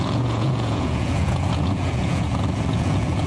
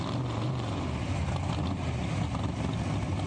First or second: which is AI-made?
first